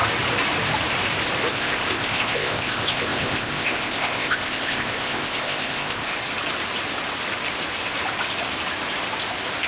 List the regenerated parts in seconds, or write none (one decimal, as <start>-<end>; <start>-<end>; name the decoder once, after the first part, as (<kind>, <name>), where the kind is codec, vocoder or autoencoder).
1.5-6.1 (codec, ZipCodec)